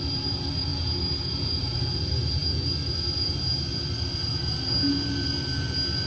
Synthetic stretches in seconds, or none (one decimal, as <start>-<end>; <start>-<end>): none